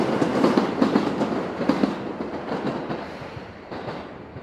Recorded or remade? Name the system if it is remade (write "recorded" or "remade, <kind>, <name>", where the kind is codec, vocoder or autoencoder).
recorded